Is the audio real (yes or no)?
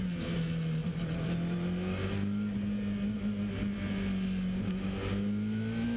yes